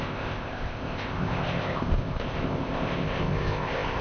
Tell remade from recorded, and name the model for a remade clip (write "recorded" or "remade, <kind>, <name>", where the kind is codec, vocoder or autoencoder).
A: remade, codec, ZipCodec